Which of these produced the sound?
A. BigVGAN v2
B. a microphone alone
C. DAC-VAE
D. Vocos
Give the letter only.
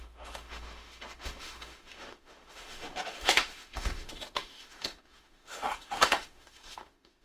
C